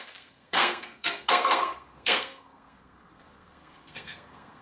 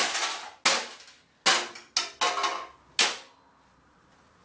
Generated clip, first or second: first